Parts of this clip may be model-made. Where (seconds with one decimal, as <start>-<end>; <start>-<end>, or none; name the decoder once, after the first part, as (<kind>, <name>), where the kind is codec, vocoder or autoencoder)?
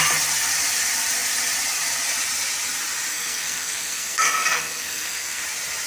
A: 3.1-5.4 (codec, SNAC)